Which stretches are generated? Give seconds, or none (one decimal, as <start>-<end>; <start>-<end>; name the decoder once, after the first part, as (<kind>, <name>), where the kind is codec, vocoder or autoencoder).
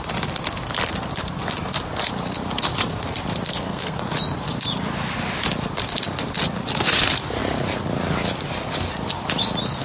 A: 3.5-4.0 (codec, SNAC)